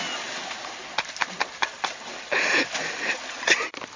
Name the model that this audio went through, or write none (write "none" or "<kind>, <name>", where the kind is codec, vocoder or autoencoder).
none